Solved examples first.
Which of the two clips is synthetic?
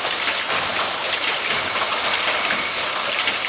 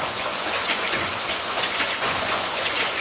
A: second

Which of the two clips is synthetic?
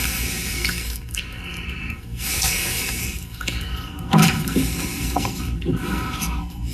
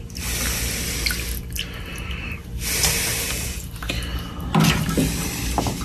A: first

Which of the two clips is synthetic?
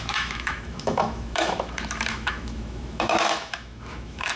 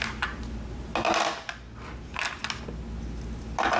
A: first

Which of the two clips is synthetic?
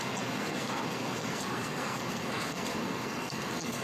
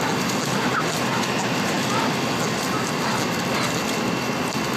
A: first